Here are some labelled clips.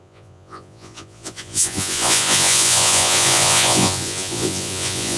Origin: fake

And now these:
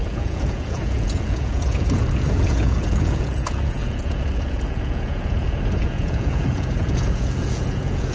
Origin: fake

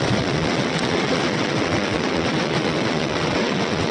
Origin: fake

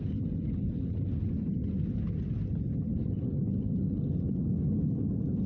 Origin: real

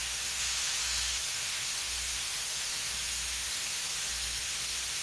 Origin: fake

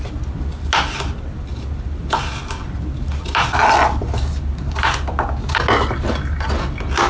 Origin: real